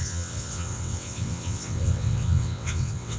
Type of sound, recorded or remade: remade